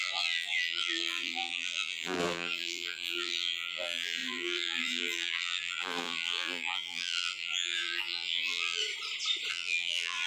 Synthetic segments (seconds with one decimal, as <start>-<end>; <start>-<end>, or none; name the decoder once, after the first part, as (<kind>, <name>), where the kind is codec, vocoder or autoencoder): 0.0-8.8 (vocoder, BigVGAN v2); 9.5-10.3